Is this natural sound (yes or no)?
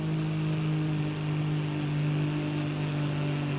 yes